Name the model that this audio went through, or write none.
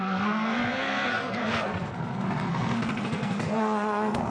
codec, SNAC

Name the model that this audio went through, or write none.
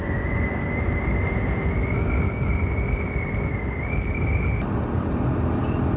none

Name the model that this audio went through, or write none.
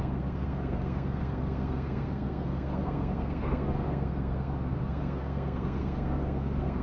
codec, SNAC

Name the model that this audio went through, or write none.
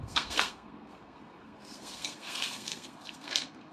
codec, SNAC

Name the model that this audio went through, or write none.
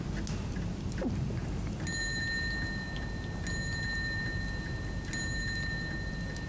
none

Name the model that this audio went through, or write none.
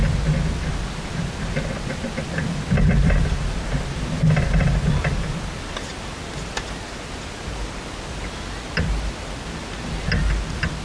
none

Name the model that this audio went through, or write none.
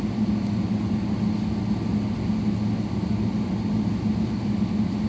none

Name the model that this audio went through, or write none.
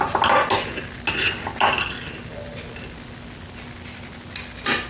none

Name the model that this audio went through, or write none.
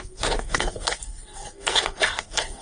codec, SNAC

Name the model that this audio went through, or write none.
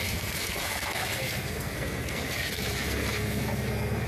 codec, SNAC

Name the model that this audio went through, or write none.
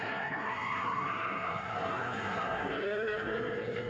codec, SNAC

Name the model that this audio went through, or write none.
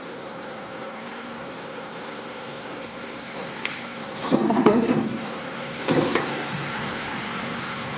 codec, SNAC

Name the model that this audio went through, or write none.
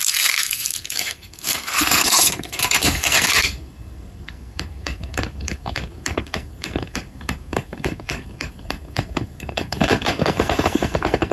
codec, SNAC